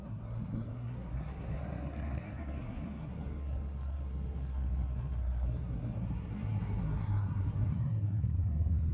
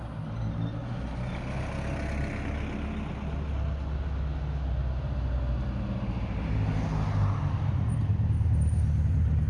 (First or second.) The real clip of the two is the second